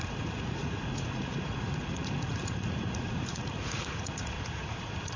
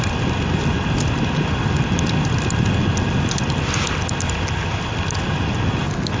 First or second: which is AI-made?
first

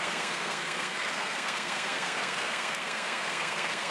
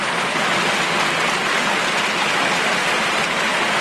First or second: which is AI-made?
first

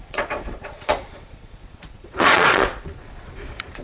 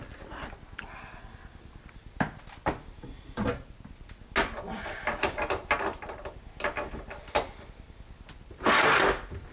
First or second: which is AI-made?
first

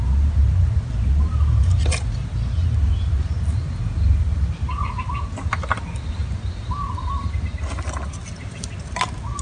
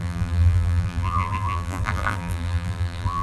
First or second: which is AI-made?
second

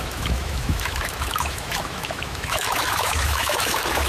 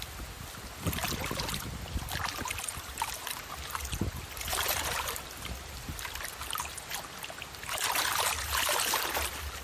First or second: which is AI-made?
first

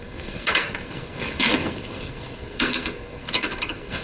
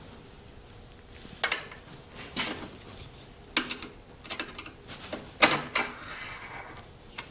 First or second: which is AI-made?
first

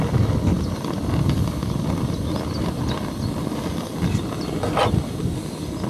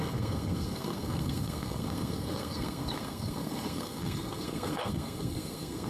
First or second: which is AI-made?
second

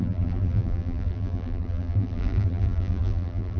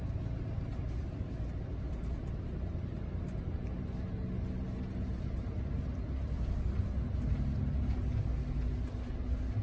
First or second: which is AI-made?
first